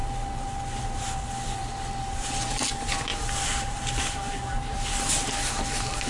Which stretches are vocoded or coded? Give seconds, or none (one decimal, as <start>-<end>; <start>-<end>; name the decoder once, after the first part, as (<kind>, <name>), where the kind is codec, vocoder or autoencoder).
3.1-5.6 (vocoder, BigVGAN v2)